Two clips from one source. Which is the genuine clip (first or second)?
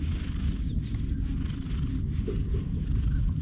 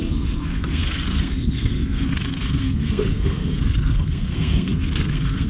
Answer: first